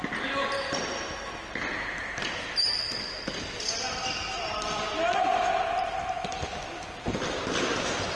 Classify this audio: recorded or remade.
recorded